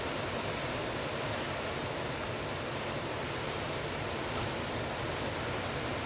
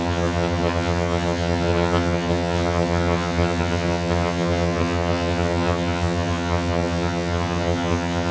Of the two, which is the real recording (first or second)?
first